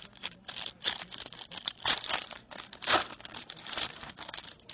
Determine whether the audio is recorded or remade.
recorded